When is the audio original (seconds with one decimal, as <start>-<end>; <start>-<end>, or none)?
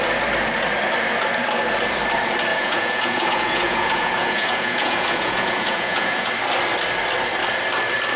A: 0.0-2.5; 6.3-8.2